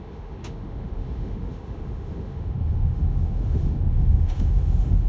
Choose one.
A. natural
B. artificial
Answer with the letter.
B